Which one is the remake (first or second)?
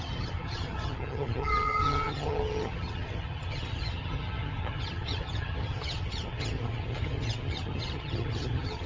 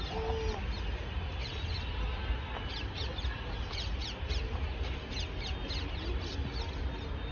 first